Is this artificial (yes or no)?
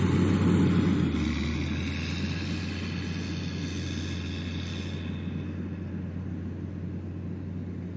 no